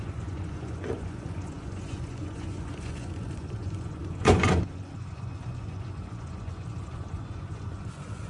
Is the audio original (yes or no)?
no